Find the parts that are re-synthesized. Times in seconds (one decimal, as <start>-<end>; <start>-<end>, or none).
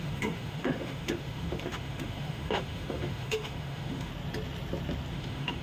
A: 0.0-4.1; 5.1-5.6